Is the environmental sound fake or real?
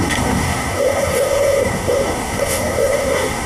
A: fake